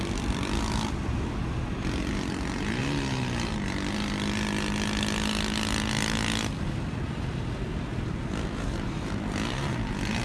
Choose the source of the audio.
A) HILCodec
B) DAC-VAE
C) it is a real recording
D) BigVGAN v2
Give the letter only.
C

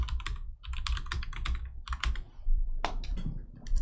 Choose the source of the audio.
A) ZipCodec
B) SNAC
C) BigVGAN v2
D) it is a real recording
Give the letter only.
C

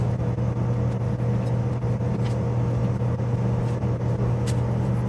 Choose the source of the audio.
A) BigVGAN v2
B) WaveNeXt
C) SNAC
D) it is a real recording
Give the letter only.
D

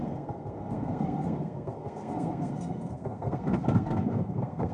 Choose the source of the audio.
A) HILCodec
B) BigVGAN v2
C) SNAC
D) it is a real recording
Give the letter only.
C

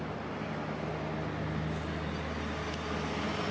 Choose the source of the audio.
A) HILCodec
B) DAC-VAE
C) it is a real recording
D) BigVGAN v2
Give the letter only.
C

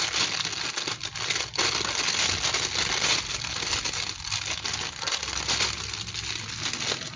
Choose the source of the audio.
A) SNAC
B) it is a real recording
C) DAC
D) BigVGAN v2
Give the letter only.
B